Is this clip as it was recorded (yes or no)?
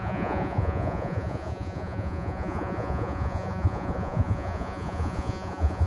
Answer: no